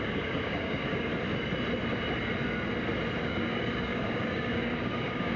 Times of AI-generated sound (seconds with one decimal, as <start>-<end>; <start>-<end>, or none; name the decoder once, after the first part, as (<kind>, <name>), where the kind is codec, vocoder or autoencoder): 0.0-1.1 (codec, DAC); 3.2-5.4